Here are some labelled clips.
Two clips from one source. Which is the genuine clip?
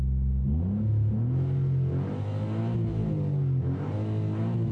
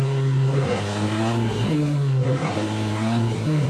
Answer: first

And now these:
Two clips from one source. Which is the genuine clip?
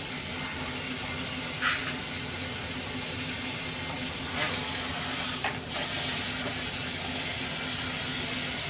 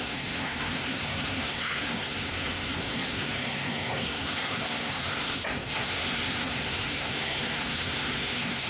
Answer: first